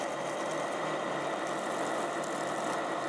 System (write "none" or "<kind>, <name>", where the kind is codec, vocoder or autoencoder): vocoder, BigVGAN v2